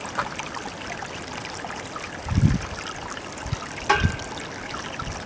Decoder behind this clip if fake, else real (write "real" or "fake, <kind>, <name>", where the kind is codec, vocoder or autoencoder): real